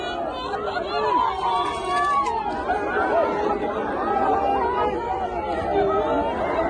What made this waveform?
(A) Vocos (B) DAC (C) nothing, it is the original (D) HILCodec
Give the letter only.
C